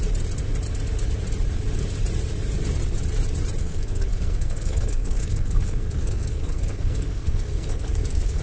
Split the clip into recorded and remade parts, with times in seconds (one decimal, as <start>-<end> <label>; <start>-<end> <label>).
0.0-3.6 recorded; 3.6-8.4 remade